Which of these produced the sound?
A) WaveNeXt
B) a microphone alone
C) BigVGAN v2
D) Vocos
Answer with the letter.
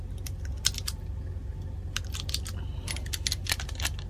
B